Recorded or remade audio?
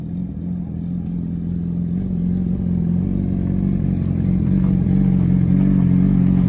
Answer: recorded